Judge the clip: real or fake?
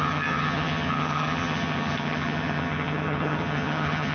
fake